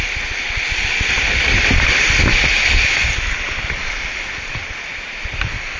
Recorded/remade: recorded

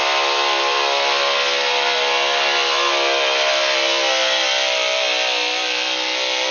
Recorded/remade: recorded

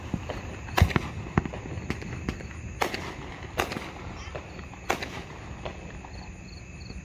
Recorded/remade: recorded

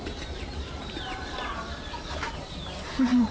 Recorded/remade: remade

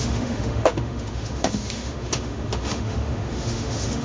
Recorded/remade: remade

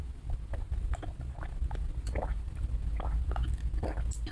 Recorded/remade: recorded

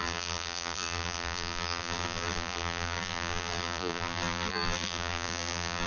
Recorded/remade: remade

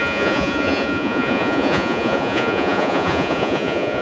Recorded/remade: remade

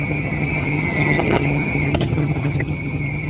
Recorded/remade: remade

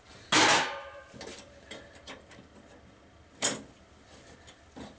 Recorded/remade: recorded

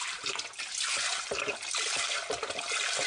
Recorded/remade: recorded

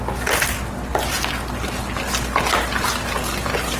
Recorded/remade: recorded